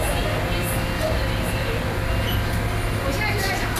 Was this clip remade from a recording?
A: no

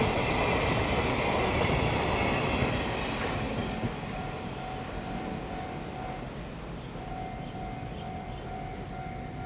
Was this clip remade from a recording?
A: no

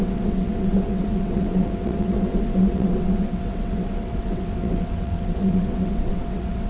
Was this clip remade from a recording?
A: yes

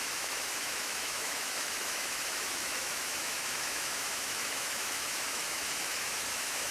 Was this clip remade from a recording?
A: yes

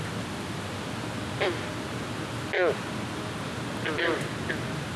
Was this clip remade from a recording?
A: no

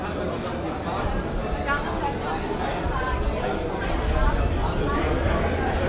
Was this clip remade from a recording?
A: no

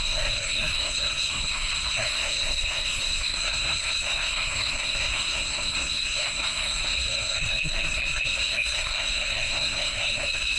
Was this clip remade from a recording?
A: yes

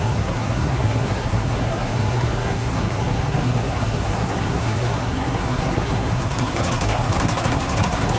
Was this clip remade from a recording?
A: yes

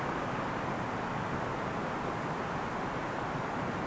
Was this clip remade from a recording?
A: no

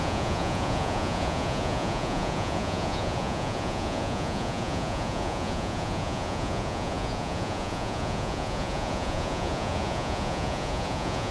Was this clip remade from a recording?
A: yes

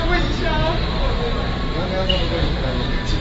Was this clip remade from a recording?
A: no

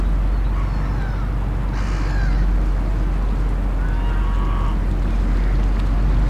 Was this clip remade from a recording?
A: no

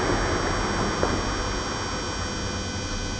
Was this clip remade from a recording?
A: no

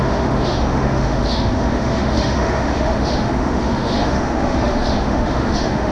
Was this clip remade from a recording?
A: yes